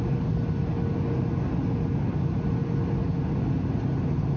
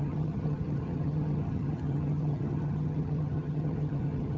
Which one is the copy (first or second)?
second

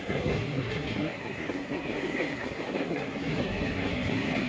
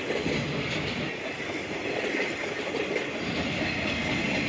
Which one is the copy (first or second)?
first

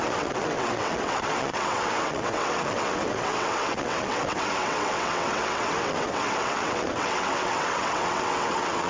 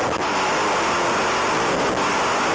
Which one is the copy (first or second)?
first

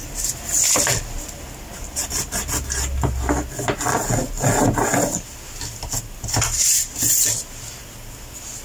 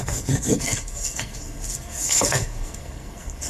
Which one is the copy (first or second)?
second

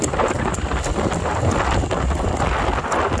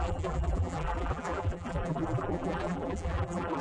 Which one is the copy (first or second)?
second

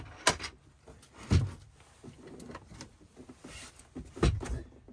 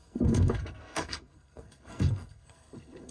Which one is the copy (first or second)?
second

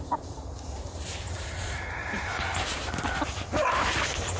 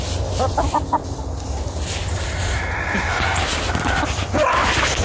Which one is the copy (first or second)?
first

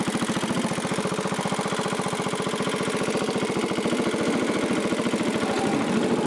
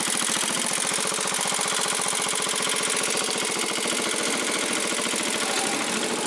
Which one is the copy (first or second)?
first